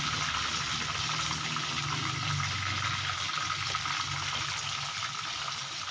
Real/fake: real